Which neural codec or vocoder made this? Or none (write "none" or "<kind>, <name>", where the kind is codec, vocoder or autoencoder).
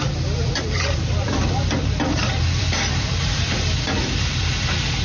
vocoder, BigVGAN v2